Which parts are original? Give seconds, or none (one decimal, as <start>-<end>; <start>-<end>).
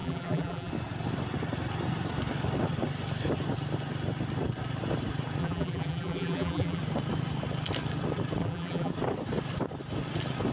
0.7-5.4; 6.8-8.4; 8.9-10.5